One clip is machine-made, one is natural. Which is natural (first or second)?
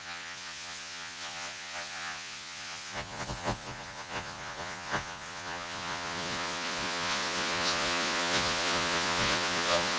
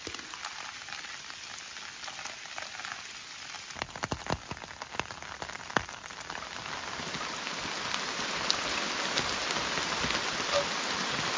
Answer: second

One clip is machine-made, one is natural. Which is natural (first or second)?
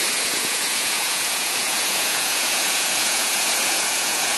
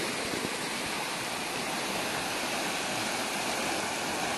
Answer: second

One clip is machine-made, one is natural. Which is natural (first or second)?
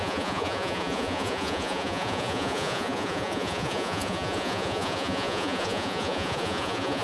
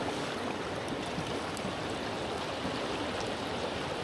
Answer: second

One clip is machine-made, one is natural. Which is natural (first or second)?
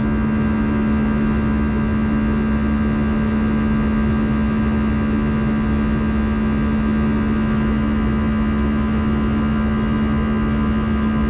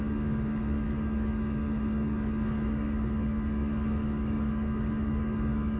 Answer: first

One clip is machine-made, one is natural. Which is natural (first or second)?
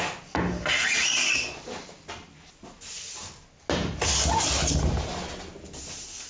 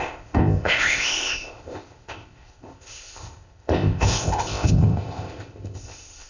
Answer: first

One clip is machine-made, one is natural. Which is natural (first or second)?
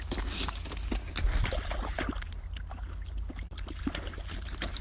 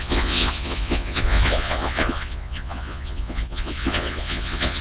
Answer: first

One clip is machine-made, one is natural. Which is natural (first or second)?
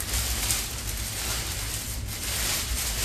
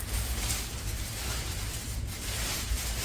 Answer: first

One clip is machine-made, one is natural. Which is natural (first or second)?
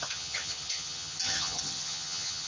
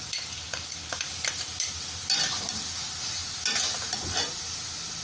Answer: second